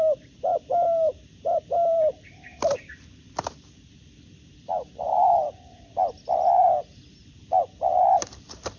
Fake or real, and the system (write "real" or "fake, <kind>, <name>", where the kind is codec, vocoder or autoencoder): fake, vocoder, BigVGAN v2